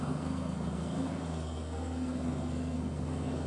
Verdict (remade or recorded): remade